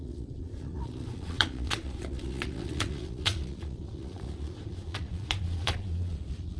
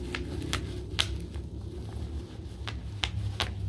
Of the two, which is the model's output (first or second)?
first